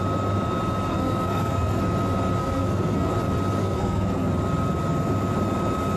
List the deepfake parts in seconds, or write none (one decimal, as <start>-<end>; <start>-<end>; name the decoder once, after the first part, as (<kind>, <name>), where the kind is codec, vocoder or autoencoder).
0.9-1.8 (codec, SNAC); 2.4-3.1; 3.6-4.3